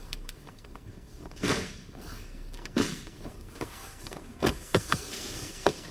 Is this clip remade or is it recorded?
remade